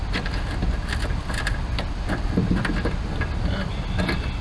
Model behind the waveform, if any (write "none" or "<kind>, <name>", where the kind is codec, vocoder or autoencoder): none